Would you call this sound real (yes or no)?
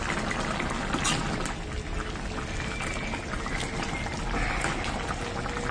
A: yes